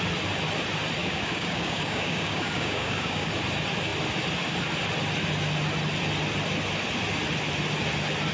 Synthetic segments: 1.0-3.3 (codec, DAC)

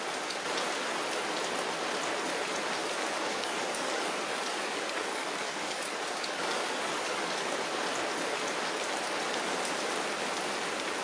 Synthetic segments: 2.8-7.6 (codec, DAC)

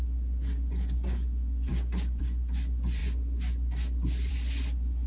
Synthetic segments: 1.7-2.2 (codec, DAC)

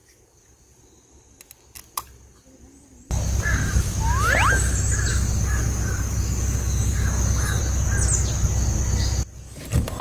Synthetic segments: 5.1-7.6 (codec, DAC)